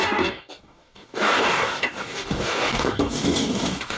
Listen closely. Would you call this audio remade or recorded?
remade